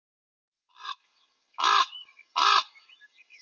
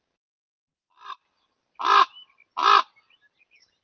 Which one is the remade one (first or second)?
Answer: first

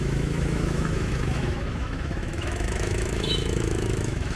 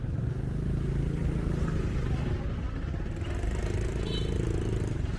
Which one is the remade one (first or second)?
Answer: first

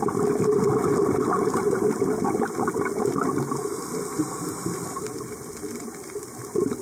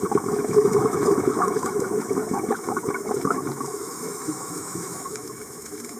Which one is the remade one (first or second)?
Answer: second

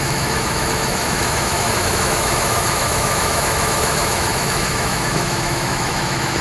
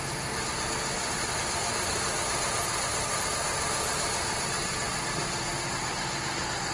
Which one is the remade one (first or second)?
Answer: first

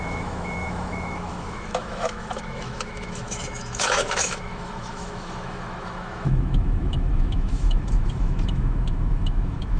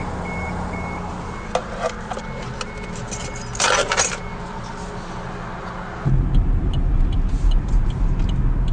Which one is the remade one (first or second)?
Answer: first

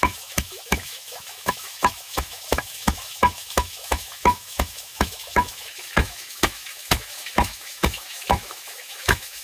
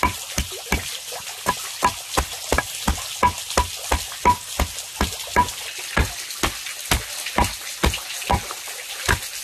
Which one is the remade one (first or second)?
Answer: first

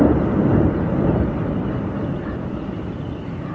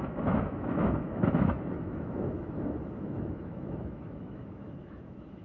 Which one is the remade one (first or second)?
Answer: second